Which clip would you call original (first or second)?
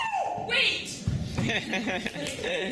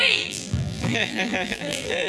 first